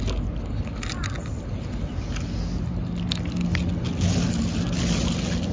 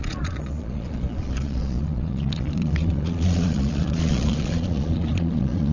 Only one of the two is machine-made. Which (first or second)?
second